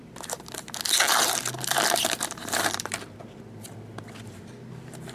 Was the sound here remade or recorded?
recorded